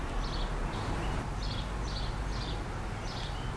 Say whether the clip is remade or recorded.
recorded